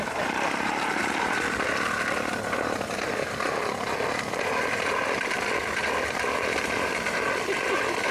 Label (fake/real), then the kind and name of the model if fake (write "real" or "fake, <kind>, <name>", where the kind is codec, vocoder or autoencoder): real